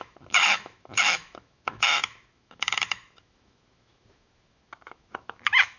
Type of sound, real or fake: fake